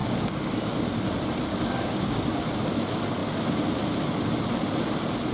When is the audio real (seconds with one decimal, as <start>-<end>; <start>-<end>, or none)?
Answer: 0.8-1.5; 2.2-5.3